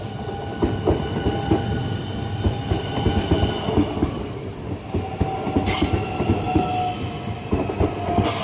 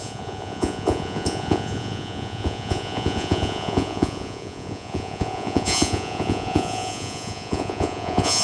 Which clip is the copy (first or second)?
second